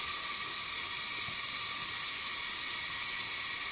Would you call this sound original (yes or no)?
yes